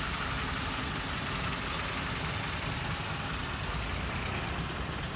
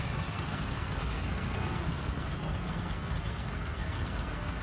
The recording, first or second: first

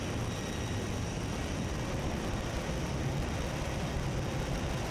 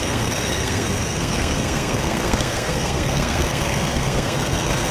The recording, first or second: first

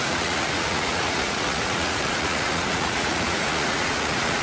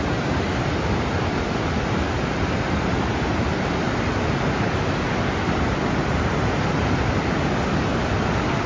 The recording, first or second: second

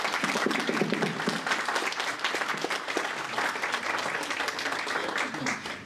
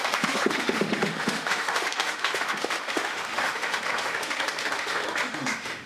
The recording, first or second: first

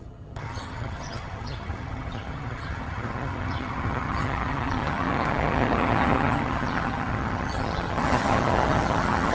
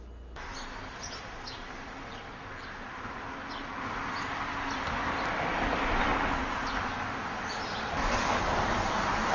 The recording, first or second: second